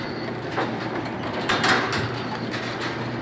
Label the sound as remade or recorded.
recorded